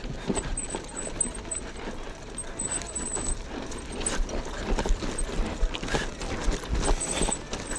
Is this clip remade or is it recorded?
recorded